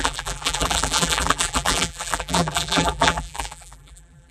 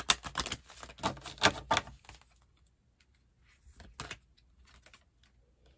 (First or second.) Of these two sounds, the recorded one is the second